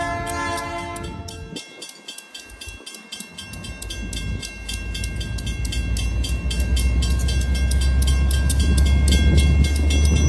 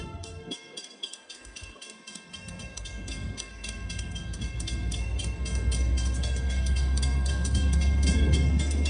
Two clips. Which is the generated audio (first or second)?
second